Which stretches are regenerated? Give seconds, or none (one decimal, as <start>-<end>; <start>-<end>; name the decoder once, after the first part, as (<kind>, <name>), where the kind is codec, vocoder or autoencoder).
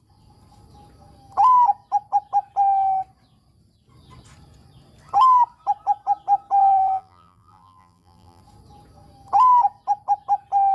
6.6-8.4 (vocoder, BigVGAN v2)